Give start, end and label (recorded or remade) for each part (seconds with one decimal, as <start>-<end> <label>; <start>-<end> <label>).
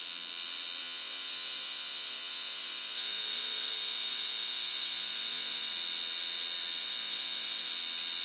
0.0-0.8 recorded; 0.8-5.7 remade; 5.7-6.8 recorded; 6.8-7.7 remade; 7.7-8.2 recorded